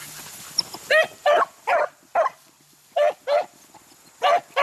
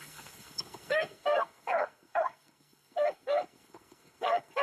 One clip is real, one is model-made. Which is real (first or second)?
first